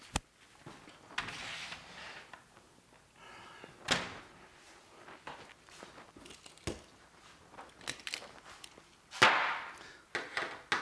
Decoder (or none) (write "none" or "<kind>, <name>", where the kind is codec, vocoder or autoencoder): none